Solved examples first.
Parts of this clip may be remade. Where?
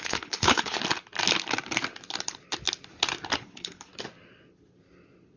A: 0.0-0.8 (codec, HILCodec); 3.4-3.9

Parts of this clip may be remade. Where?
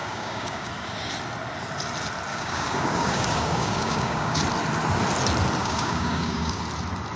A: 0.0-0.7 (codec, DAC); 2.3-4.4; 5.6-6.6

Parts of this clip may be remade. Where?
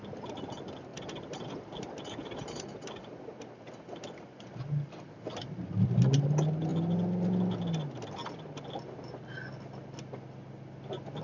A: 0.9-6.0 (vocoder, BigVGAN v2)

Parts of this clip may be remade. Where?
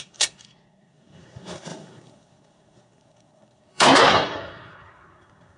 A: 0.0-5.6 (codec, SNAC)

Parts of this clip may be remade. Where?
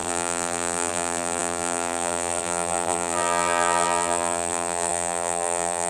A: 0.0-5.9 (vocoder, BigVGAN v2)